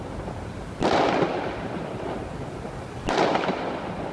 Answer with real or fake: real